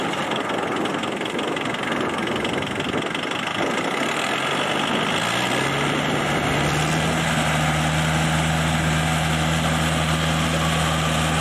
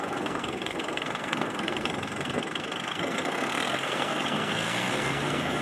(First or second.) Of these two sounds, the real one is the first